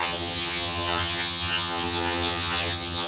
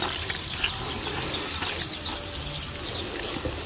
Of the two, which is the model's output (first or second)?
first